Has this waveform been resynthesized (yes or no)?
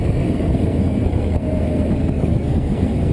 yes